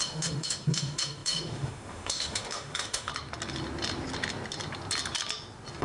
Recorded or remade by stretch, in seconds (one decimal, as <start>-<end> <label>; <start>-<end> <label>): 0.0-3.1 remade; 3.1-5.8 recorded